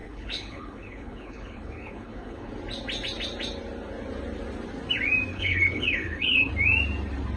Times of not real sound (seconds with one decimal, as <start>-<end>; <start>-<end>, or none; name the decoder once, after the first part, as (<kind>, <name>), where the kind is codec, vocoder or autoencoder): 0.0-2.5 (codec, HILCodec); 5.3-6.5